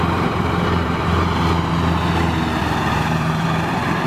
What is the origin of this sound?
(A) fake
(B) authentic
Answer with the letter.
A